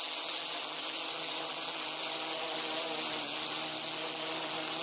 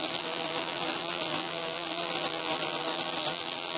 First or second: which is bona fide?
first